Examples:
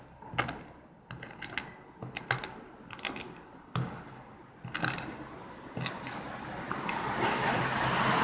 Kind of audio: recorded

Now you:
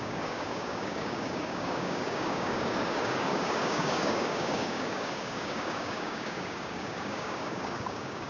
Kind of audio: remade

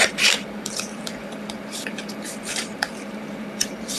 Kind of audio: remade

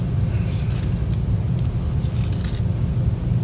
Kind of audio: recorded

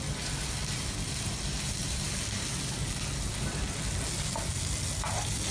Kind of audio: recorded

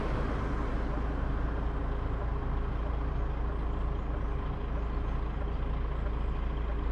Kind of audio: recorded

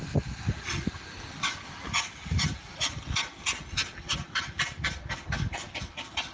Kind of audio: recorded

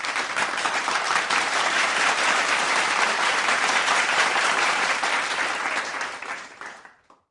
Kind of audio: remade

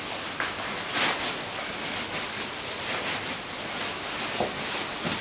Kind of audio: recorded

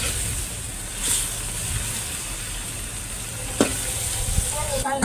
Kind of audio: recorded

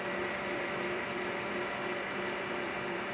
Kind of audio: remade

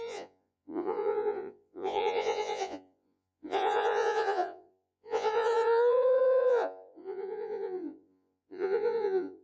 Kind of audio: remade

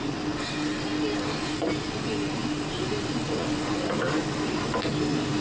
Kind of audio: recorded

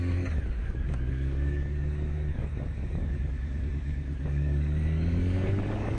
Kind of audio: remade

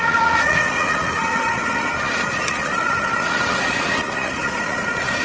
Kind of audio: remade